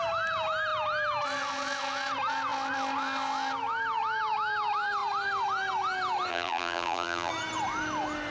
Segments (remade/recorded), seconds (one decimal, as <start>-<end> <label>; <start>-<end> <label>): 0.0-6.3 recorded; 6.3-7.3 remade; 7.3-8.3 recorded